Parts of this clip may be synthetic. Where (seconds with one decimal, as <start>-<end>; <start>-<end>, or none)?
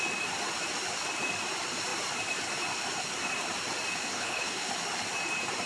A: 4.1-4.7